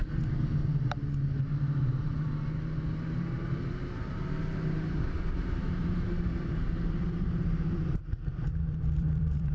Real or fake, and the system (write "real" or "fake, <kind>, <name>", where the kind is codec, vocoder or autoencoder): fake, vocoder, BigVGAN v2